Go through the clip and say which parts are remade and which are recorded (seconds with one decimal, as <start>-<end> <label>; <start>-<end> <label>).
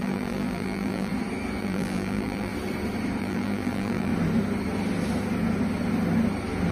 0.0-1.1 remade; 1.1-1.6 recorded; 1.6-2.5 remade; 2.5-3.2 recorded; 3.2-4.1 remade; 4.1-6.7 recorded